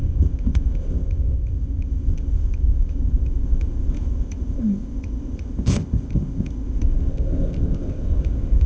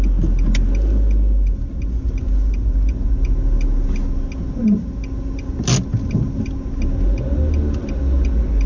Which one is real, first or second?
second